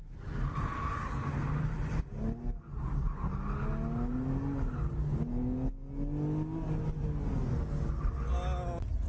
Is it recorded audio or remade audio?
recorded